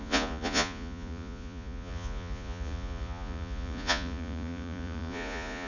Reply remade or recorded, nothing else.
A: remade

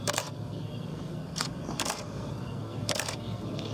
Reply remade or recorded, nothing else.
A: remade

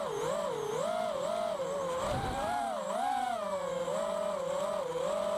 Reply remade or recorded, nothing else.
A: recorded